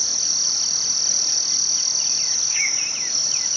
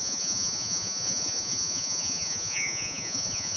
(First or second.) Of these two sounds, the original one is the first